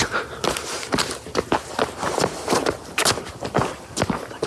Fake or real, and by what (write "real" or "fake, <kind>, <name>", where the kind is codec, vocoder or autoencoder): real